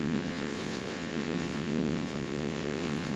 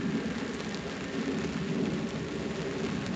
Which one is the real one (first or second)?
second